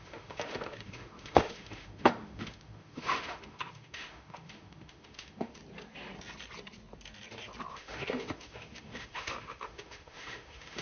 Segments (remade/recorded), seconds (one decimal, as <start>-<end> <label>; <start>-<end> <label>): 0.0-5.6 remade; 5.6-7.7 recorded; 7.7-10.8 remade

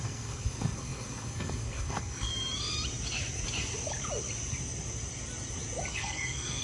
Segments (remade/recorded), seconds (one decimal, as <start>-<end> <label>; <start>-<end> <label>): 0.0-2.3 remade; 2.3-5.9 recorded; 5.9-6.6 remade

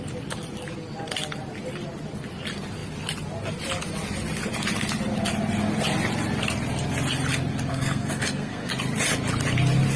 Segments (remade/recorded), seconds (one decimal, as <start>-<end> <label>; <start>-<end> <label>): 0.0-7.7 recorded; 7.7-8.7 remade; 8.7-10.0 recorded

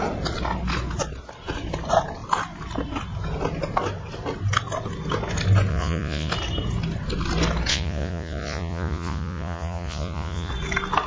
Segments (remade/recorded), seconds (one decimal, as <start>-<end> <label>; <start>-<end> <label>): 0.0-5.7 recorded; 5.7-6.3 remade; 6.3-7.7 recorded; 7.7-10.5 remade; 10.5-11.1 recorded